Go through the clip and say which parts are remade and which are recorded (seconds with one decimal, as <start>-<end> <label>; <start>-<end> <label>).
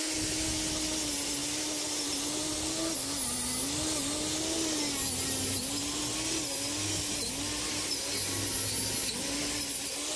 0.0-10.2 recorded